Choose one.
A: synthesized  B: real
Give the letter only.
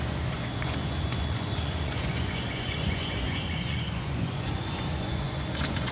A